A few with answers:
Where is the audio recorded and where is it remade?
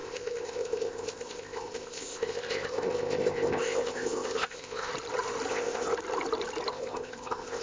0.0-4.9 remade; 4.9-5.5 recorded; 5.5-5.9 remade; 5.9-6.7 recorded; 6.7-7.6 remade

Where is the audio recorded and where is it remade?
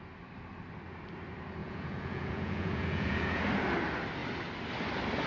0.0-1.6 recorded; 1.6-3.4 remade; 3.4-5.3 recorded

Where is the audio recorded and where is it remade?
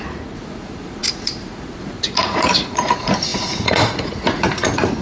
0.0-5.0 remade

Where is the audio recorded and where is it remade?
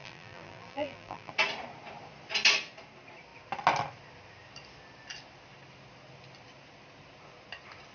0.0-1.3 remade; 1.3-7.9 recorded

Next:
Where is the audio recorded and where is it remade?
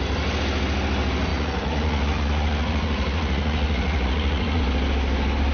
0.0-1.3 recorded; 1.3-4.6 remade; 4.6-5.5 recorded